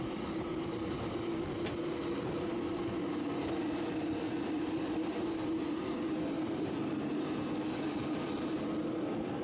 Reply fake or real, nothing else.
real